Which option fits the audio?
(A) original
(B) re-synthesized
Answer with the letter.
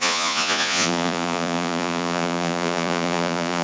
B